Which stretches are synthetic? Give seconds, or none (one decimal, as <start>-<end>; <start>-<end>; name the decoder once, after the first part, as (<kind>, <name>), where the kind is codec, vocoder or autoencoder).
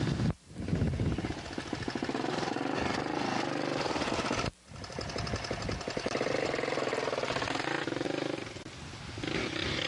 none